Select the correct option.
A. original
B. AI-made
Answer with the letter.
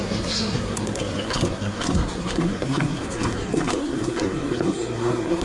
B